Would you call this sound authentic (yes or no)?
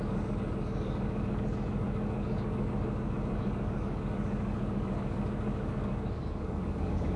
no